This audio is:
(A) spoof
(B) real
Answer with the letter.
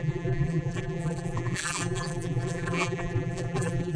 A